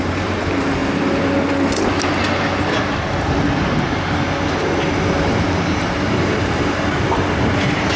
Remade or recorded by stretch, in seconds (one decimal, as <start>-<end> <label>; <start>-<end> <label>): 0.0-0.8 remade; 0.8-5.6 recorded; 5.6-8.0 remade